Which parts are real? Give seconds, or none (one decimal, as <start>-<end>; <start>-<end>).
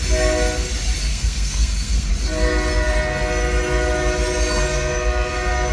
0.0-1.1; 2.1-5.7